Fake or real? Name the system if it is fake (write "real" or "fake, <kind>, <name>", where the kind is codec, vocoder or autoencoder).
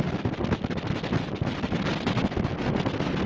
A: real